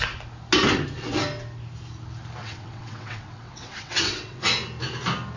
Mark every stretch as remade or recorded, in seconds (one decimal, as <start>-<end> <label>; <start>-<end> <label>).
0.0-2.4 recorded; 2.4-4.4 remade; 4.4-5.4 recorded

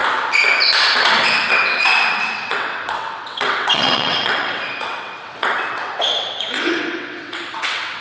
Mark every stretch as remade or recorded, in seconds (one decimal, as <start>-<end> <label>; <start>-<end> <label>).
0.0-1.0 recorded; 1.0-8.0 remade

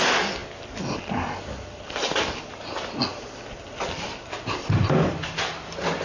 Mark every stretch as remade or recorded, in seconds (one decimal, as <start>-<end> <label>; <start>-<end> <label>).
0.0-6.0 recorded